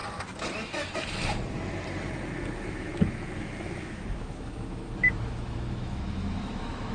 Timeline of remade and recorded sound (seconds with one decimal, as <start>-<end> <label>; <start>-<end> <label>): 0.0-2.6 recorded; 2.6-6.9 remade

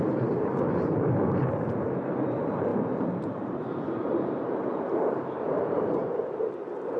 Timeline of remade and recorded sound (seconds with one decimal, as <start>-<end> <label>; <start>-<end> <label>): 0.0-7.0 remade

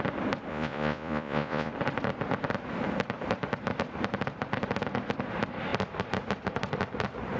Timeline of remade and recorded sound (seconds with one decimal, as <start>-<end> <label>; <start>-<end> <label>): 0.0-0.5 recorded; 0.5-1.7 remade; 1.7-7.4 recorded

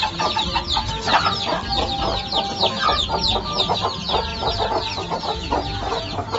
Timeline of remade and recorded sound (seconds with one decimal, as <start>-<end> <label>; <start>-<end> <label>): 0.0-6.4 recorded

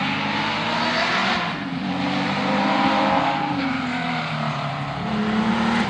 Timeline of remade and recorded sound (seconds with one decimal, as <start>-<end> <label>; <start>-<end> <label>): 0.0-1.2 recorded; 1.2-4.7 remade; 4.7-5.9 recorded

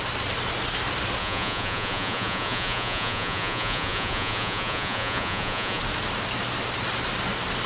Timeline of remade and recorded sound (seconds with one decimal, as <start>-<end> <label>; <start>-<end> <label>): 0.0-1.2 recorded; 1.2-5.8 remade; 5.8-7.7 recorded

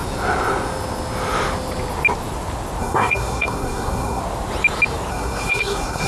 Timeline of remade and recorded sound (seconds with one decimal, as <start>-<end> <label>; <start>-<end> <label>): 0.0-2.8 recorded; 2.8-4.2 remade; 4.2-5.1 recorded; 5.1-6.1 remade